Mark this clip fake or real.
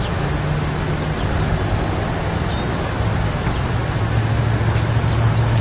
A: real